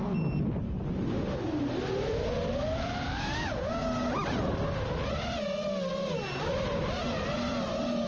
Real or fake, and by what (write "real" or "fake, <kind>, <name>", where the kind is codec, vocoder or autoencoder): real